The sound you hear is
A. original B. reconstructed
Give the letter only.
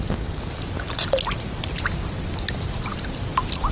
A